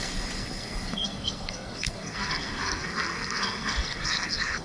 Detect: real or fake fake